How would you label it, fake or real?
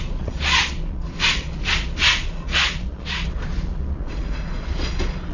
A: fake